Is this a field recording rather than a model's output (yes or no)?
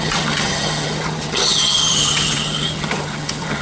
no